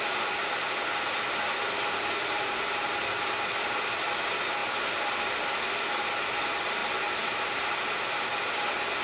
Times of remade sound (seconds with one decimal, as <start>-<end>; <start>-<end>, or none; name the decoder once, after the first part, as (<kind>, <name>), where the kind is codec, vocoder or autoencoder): none